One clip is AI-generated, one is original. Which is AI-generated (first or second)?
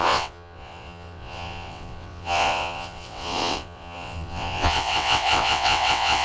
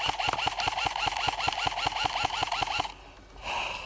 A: first